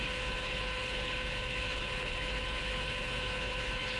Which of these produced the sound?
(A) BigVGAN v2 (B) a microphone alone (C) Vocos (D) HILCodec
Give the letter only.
D